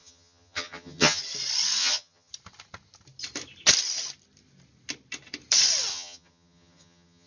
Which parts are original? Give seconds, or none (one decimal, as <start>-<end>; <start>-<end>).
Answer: 1.2-1.8; 2.3-5.9

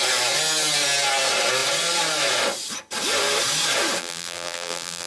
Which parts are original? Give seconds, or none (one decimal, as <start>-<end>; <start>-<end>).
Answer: 0.0-4.0

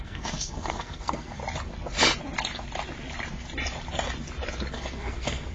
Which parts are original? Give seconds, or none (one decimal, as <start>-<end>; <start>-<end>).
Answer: 1.4-4.7

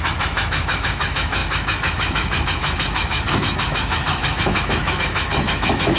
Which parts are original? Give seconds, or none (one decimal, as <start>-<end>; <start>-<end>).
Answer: none

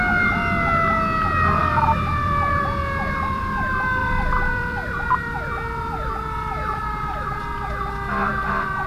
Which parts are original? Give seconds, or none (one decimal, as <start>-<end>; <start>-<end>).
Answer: 0.0-1.6; 3.6-4.0; 7.4-8.9

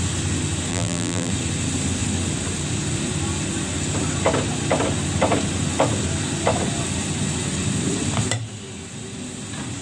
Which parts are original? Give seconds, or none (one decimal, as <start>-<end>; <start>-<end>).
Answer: 0.0-0.7; 1.3-9.8

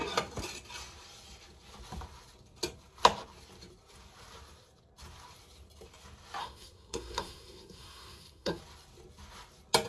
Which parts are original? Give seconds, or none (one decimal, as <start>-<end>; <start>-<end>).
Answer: 0.0-6.4; 8.6-9.9

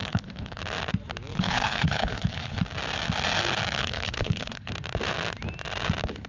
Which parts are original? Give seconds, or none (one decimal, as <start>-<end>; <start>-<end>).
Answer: 0.6-1.3; 2.6-3.8; 4.7-6.3